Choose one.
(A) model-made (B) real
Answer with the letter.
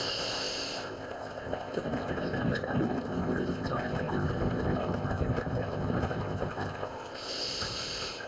A